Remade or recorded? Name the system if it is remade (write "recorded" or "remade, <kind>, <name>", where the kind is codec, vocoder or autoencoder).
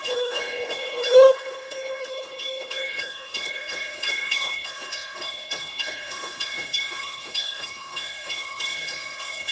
remade, codec, HILCodec